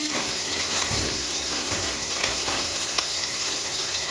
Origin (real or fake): fake